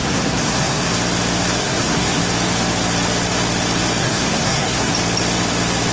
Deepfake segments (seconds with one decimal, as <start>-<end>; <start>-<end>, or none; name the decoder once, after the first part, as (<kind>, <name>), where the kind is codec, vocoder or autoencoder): 0.0-0.9 (codec, SNAC); 1.6-2.2; 4.0-4.9